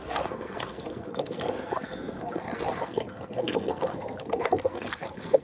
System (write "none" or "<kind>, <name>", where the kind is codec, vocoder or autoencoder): codec, SNAC